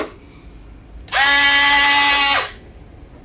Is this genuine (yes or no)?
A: yes